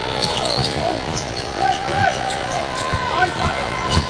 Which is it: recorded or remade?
remade